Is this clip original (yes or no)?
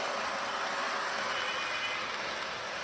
yes